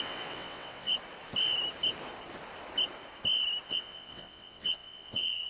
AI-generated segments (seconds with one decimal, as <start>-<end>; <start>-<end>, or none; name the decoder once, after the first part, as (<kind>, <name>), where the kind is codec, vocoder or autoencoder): 0.0-0.9 (vocoder, WaveNeXt); 3.7-5.5